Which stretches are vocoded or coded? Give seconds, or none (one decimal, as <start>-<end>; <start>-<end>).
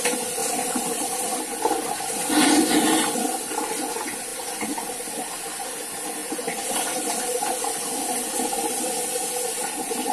0.0-10.1